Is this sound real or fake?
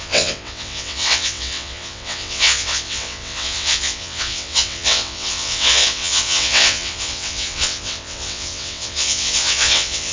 fake